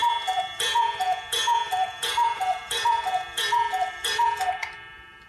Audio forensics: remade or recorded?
remade